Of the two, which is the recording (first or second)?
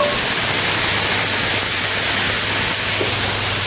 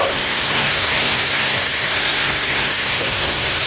first